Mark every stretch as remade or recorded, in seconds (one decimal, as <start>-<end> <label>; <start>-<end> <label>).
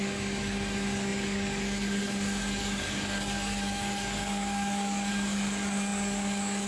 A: 0.0-6.7 remade